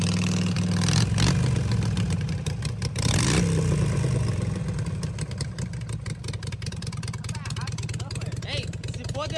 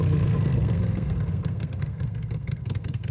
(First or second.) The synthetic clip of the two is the second